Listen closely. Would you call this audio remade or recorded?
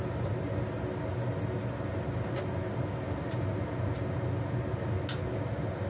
recorded